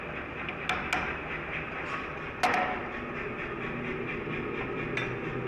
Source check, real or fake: real